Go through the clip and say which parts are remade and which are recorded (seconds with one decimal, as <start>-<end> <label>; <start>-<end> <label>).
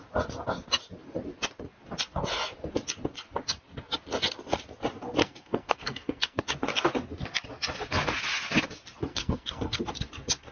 0.0-5.2 recorded; 5.2-6.4 remade; 6.4-9.1 recorded; 9.1-9.8 remade; 9.8-10.5 recorded